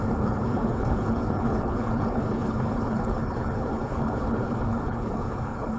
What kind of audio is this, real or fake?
fake